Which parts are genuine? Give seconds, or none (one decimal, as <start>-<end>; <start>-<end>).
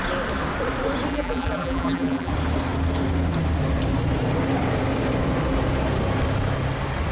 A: 0.0-1.1; 2.3-7.1